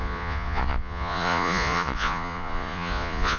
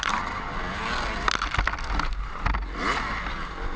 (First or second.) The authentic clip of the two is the second